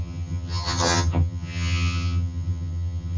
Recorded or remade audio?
remade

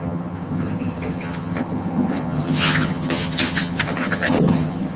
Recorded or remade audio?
remade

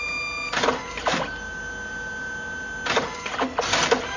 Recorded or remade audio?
recorded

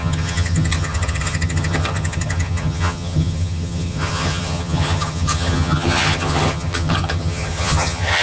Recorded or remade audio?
remade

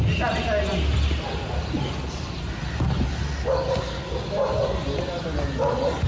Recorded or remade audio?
recorded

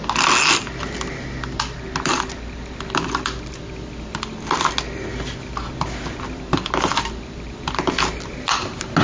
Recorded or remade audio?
recorded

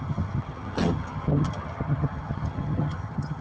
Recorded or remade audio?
remade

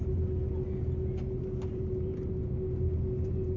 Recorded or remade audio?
recorded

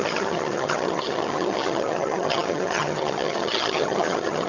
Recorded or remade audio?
remade